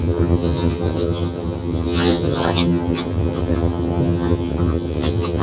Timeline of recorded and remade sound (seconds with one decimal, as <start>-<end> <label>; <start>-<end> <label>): 0.0-5.4 remade